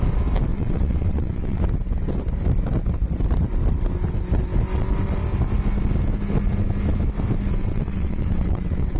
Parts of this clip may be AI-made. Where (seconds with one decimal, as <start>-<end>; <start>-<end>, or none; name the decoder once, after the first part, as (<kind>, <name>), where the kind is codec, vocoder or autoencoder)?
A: 0.5-1.6 (vocoder, WaveNeXt); 7.6-9.0